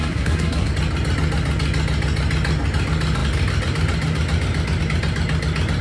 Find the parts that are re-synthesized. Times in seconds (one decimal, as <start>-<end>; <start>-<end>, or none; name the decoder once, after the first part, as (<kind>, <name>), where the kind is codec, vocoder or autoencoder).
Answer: 0.0-0.7 (codec, SNAC)